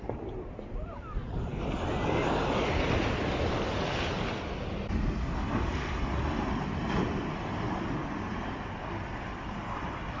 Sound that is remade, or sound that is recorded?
recorded